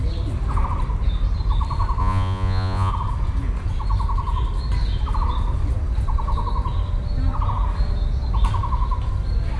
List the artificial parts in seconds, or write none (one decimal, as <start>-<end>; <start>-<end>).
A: 2.0-2.9

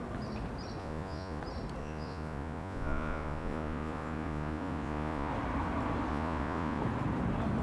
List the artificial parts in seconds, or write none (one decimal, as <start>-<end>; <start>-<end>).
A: 0.8-1.4; 1.8-5.3; 6.1-6.8

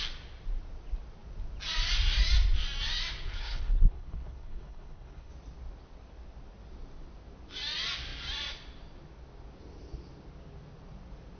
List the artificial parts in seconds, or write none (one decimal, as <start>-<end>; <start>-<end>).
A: 3.3-5.3